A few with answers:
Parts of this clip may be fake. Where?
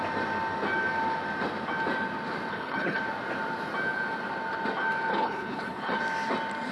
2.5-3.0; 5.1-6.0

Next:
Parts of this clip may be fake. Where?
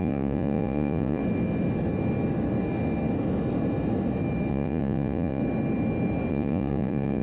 0.0-1.2; 4.5-5.4; 6.3-7.2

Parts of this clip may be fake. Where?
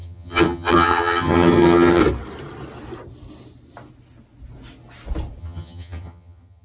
0.0-2.0; 5.4-6.6